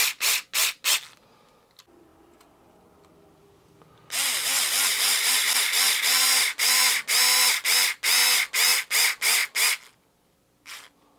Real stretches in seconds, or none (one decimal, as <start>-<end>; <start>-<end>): 0.0-11.2